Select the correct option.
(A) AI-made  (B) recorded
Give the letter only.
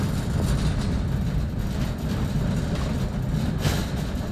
B